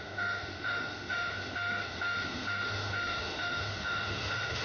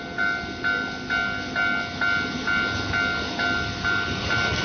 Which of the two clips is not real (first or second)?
first